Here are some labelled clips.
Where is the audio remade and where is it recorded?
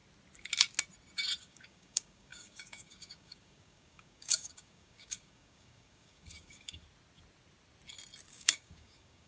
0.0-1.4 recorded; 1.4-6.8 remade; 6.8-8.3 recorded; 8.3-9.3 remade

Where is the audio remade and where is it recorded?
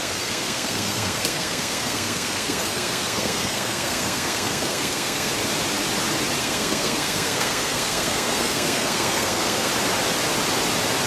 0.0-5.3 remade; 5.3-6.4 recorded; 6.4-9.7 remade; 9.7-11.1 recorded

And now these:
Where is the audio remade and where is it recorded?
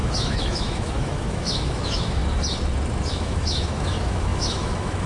0.0-2.2 remade; 2.2-3.1 recorded; 3.1-5.1 remade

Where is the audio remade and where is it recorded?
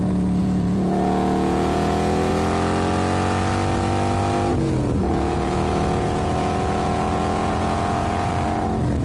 0.0-0.4 recorded; 0.4-2.3 remade; 2.3-4.5 recorded; 4.5-8.3 remade; 8.3-9.0 recorded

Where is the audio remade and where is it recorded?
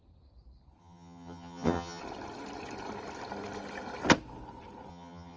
0.0-0.8 recorded; 0.8-2.0 remade; 2.0-4.9 recorded; 4.9-5.4 remade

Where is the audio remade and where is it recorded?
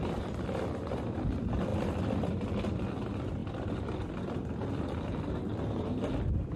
0.0-0.8 remade; 0.8-1.7 recorded; 1.7-2.3 remade; 2.3-3.4 recorded; 3.4-6.1 remade; 6.1-6.6 recorded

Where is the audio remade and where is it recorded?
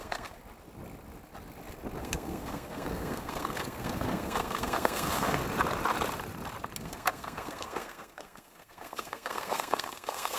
0.0-0.4 remade; 0.4-2.0 recorded; 2.0-5.4 remade; 5.4-6.8 recorded; 6.8-10.4 remade